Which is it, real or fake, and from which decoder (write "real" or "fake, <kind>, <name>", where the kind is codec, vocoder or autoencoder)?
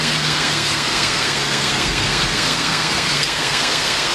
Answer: fake, codec, SNAC